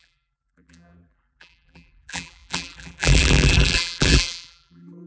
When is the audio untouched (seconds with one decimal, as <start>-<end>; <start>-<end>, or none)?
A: none